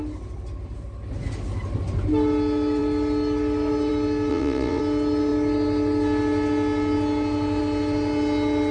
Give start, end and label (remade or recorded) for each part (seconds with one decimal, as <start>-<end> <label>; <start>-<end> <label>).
0.0-4.3 recorded; 4.3-4.8 remade; 4.8-8.7 recorded